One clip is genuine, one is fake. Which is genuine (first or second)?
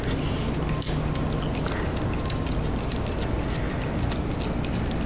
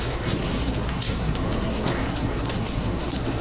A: first